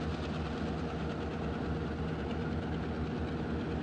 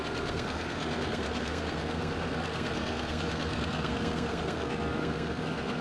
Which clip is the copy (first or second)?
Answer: second